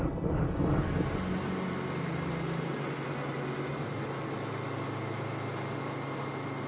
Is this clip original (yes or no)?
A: yes